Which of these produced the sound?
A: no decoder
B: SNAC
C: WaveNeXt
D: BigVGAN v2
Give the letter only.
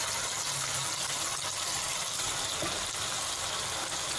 A